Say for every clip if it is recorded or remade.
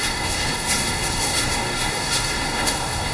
remade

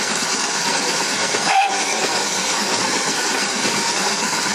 remade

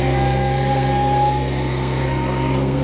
remade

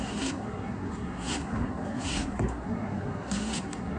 remade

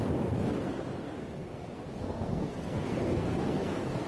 remade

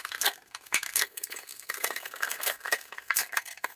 remade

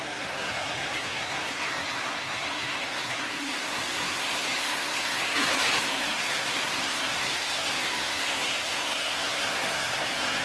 remade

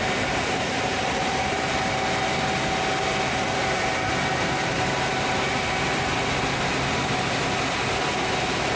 recorded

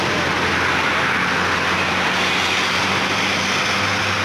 recorded